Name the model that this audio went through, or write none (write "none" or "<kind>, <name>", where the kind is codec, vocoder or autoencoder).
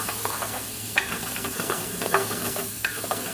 codec, SNAC